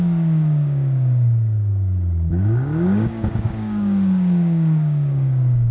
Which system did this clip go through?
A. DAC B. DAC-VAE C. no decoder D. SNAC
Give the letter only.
A